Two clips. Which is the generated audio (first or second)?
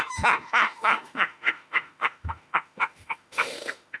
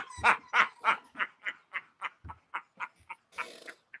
first